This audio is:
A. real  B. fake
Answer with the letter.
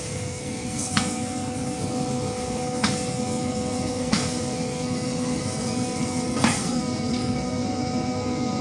B